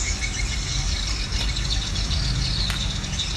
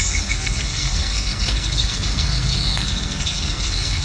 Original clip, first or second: first